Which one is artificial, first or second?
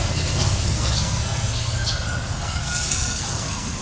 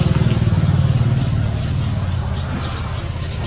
first